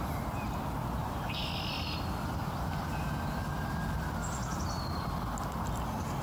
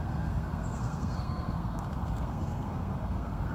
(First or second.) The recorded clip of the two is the first